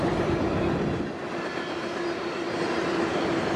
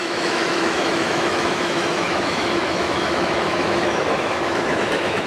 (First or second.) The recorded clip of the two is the first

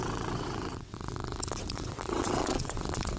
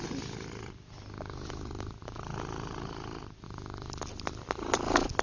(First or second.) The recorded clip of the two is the second